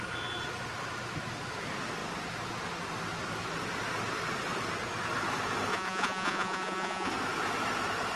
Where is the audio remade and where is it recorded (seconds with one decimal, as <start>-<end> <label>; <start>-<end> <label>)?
0.0-5.7 recorded; 5.7-7.1 remade; 7.1-8.2 recorded